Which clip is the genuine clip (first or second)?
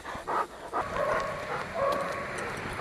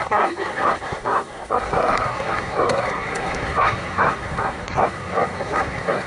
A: first